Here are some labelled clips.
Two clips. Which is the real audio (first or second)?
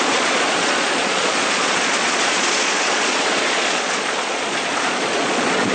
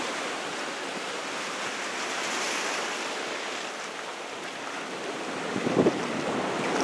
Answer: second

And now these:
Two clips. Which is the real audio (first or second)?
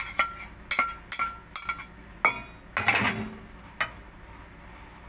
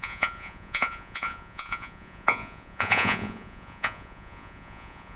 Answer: first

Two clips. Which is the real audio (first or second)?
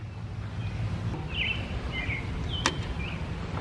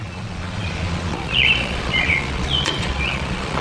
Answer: first